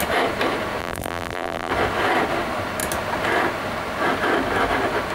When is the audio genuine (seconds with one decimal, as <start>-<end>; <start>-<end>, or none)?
0.0-0.8; 1.7-5.1